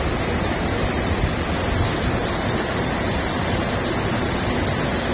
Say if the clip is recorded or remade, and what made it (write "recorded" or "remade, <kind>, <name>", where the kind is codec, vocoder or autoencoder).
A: recorded